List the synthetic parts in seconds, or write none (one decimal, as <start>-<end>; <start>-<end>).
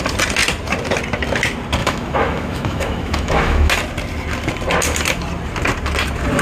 1.8-3.7